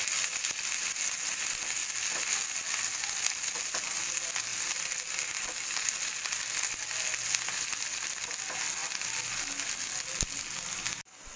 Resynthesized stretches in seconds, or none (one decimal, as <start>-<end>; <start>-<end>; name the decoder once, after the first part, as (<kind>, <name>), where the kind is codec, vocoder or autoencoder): none